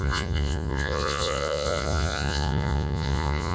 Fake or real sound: fake